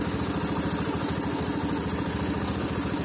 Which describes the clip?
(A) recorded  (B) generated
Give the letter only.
A